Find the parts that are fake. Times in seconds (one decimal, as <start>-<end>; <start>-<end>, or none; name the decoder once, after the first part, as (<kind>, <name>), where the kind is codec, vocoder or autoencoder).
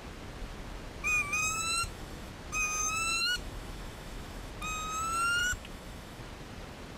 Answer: 1.4-2.3 (autoencoder, DAC-VAE); 2.8-4.5; 5.4-6.2